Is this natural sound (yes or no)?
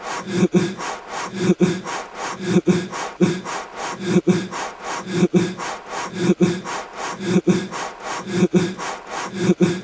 no